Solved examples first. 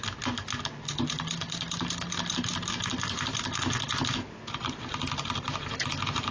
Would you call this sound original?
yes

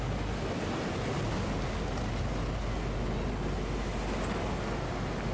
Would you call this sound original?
yes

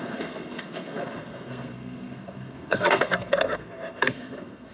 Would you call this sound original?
no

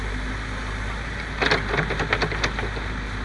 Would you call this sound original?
yes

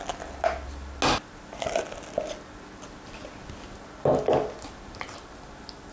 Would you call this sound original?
yes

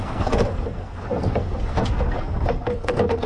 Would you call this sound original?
no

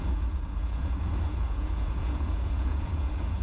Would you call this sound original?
no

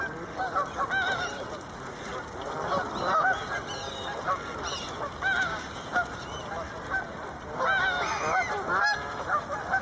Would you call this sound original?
yes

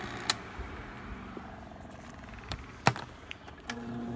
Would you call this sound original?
yes